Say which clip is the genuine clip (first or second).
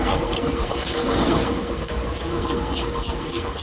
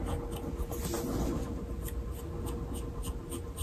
second